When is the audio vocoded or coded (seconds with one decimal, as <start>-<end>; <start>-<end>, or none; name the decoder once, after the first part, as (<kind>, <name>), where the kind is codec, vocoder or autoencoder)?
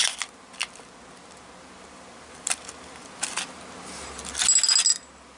none